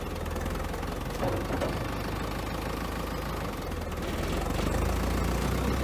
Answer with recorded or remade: recorded